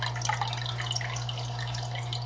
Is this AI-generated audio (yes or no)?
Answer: no